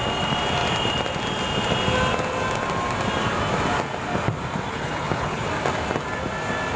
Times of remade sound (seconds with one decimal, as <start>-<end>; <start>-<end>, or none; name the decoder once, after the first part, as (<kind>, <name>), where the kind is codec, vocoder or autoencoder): 4.7-5.5 (codec, HILCodec)